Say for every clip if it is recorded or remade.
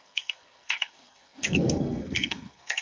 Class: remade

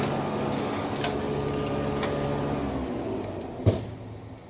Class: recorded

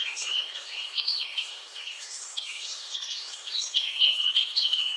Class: remade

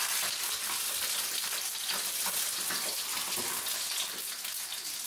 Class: recorded